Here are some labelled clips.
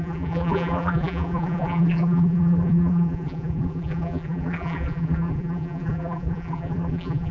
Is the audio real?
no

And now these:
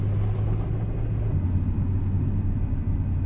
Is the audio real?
yes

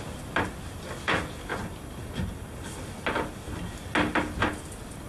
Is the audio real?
yes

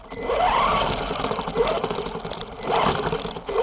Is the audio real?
yes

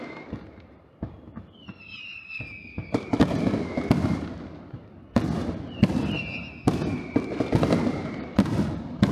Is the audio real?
yes